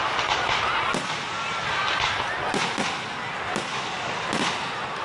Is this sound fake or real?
real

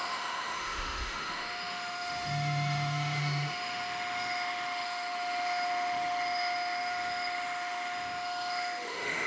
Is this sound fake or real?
fake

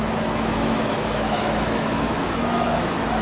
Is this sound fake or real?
fake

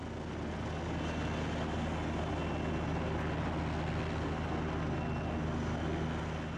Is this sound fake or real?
real